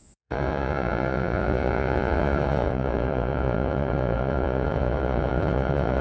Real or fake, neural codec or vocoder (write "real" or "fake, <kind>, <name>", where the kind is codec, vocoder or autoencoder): fake, vocoder, Vocos